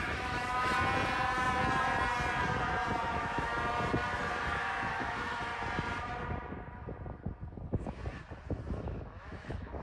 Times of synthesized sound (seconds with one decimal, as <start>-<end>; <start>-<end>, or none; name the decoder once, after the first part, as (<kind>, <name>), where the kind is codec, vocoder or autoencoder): 0.0-0.7 (autoencoder, DAC-VAE); 3.1-3.5; 4.9-5.5; 8.7-9.8